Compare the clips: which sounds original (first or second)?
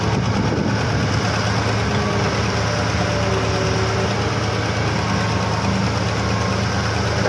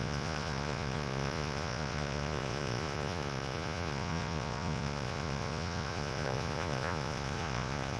first